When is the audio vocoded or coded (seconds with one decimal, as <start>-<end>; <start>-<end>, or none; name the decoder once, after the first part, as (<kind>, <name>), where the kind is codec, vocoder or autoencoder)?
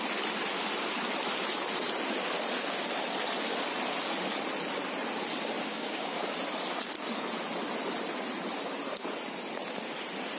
5.7-6.2 (codec, DAC)